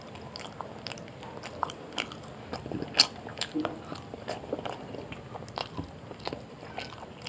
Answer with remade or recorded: recorded